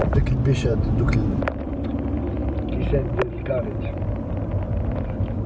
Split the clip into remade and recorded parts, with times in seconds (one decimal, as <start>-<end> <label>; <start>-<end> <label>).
0.0-1.9 remade; 1.9-5.5 recorded